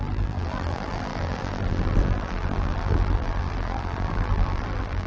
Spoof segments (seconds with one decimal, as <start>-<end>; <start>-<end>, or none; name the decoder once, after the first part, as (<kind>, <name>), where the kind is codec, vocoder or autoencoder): 0.0-5.1 (vocoder, BigVGAN v2)

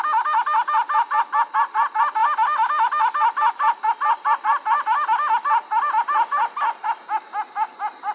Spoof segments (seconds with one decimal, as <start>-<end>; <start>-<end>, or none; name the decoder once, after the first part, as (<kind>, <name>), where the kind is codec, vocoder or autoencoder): none

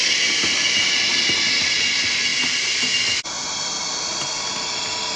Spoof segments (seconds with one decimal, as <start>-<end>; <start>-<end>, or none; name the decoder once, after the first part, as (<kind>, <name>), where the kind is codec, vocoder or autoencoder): none

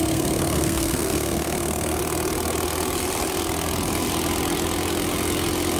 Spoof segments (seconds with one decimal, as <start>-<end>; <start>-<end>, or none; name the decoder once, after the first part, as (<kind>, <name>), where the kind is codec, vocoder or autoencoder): 0.0-2.0 (codec, SNAC)

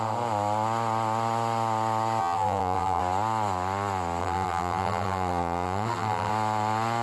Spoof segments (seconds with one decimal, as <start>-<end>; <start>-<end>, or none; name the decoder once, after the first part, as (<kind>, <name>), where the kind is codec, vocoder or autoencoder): 2.2-3.0 (vocoder, BigVGAN v2); 4.2-6.3

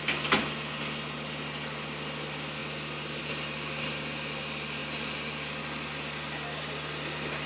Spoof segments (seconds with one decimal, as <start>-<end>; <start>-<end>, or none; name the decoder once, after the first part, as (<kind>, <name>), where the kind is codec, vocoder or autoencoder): none